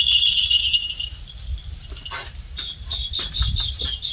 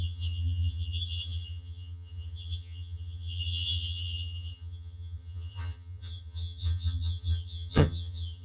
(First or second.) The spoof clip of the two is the second